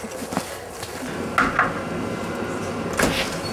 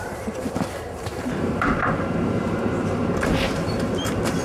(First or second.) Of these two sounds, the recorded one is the first